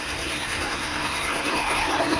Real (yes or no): no